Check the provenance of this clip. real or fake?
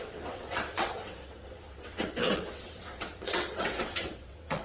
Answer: fake